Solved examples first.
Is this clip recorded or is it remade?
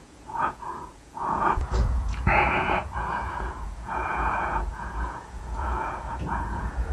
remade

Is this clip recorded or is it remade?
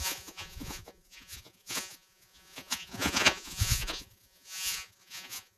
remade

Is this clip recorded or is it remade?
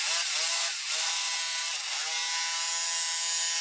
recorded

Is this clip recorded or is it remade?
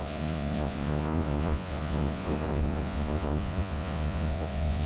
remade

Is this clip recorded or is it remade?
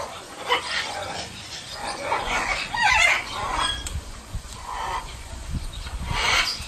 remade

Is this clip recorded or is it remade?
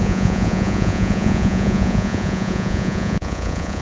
remade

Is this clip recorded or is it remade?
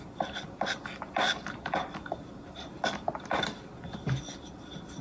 recorded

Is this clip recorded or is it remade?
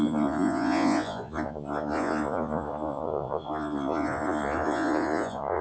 remade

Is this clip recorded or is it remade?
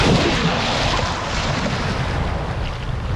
recorded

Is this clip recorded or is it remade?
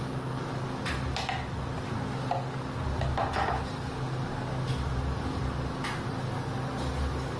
recorded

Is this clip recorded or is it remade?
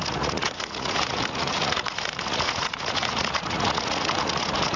remade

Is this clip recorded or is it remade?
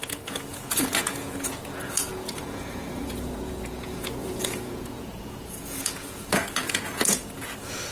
remade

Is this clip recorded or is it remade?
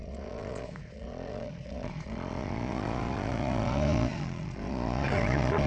remade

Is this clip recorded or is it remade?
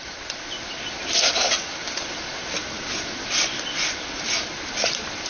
recorded